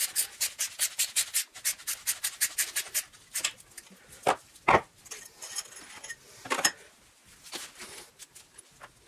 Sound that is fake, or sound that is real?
real